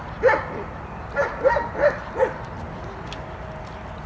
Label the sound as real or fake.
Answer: real